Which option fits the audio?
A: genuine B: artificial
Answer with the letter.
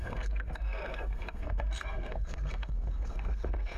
B